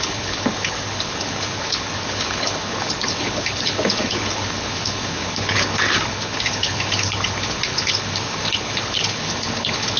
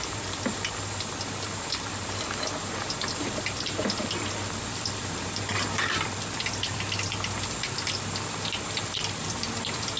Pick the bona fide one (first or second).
second